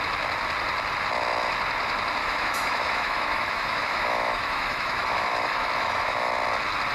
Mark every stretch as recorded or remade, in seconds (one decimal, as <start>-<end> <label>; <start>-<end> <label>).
0.0-2.2 recorded; 2.2-6.3 remade; 6.3-6.9 recorded